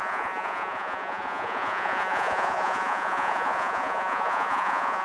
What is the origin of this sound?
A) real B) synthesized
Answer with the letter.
B